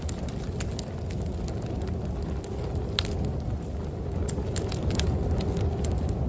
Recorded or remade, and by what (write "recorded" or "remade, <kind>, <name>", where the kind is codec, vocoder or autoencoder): recorded